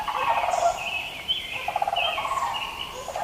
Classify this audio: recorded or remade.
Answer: remade